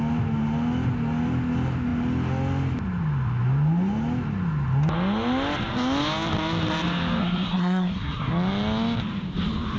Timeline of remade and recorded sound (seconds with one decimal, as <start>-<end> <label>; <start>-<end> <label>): 0.0-7.2 recorded; 7.2-8.3 remade; 8.3-9.8 recorded